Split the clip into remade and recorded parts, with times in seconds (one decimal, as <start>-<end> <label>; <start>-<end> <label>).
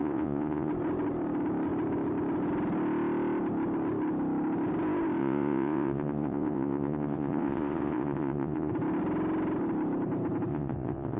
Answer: 0.0-0.7 remade; 0.7-5.2 recorded; 5.2-8.7 remade; 8.7-10.5 recorded; 10.5-11.2 remade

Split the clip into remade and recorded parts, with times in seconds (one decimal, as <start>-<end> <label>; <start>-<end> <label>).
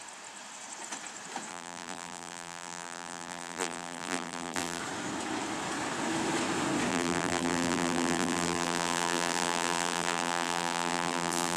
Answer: 0.0-1.5 recorded; 1.5-4.8 remade; 4.8-6.9 recorded; 6.9-11.6 remade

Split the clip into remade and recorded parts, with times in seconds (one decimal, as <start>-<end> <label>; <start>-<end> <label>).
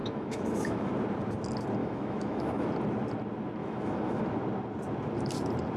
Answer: 0.0-0.9 remade; 0.9-1.8 recorded; 1.8-2.7 remade; 2.7-3.6 recorded; 3.6-4.2 remade; 4.2-5.8 recorded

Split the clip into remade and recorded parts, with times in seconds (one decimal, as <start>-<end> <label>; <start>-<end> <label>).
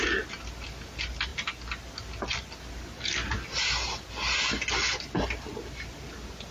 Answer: 0.0-6.5 recorded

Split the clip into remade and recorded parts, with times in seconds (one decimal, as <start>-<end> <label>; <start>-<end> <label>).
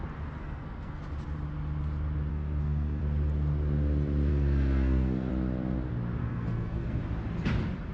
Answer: 0.0-0.4 recorded; 0.4-1.0 remade; 1.0-2.3 recorded; 2.3-3.0 remade; 3.0-4.3 recorded; 4.3-5.3 remade; 5.3-6.2 recorded; 6.2-7.0 remade; 7.0-7.9 recorded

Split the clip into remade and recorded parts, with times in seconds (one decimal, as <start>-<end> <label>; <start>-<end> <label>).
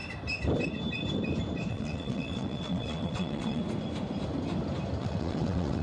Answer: 0.0-1.7 recorded; 1.7-3.6 remade; 3.6-5.0 recorded; 5.0-5.8 remade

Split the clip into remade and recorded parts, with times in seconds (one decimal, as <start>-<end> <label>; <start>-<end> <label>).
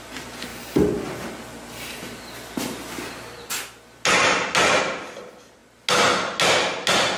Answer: 0.0-7.2 recorded